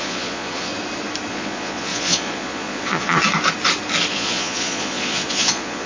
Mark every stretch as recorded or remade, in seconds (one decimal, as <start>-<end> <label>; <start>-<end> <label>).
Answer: 0.0-0.7 remade; 0.7-1.3 recorded; 1.3-3.2 remade; 3.2-4.1 recorded; 4.1-5.9 remade